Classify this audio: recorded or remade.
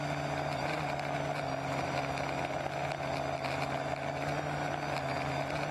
recorded